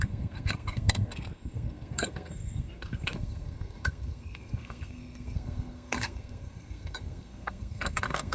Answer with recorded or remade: remade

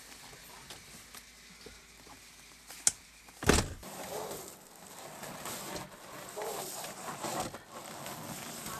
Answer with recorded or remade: recorded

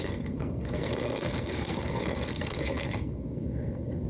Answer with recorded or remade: remade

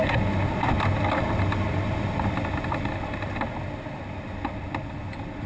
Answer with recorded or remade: recorded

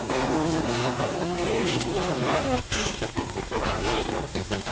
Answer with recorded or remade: remade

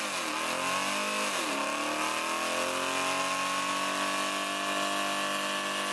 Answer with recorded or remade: recorded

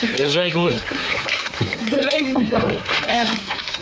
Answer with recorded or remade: remade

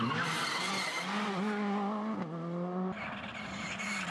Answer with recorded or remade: recorded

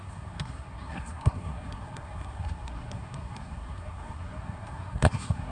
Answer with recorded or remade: remade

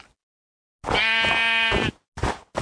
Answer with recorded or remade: recorded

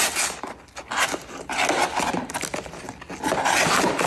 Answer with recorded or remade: recorded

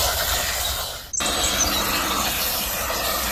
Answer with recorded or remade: recorded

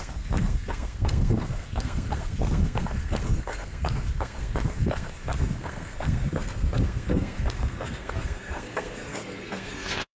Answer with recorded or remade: remade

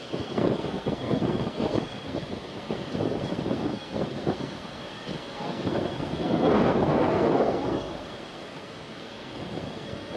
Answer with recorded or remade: remade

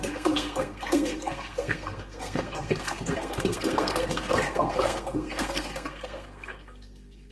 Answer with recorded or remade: remade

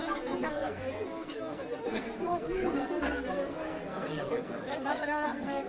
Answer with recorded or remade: remade